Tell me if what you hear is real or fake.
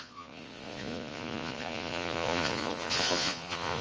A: fake